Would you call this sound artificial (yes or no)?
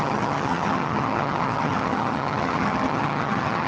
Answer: yes